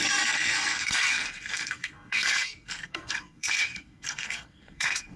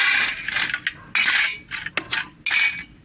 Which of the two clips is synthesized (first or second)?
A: first